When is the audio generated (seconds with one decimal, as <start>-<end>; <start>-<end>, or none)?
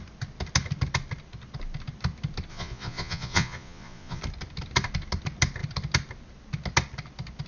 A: 2.5-4.2